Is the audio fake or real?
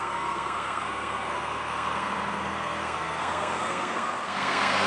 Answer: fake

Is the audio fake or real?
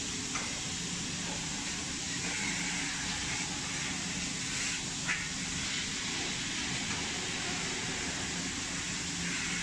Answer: real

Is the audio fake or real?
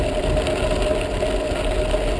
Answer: real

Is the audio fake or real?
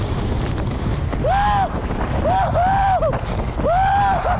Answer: real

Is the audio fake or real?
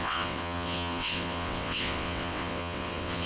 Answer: fake